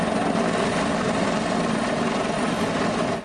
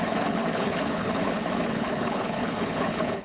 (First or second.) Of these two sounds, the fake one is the second